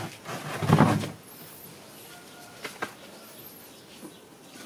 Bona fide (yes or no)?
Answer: yes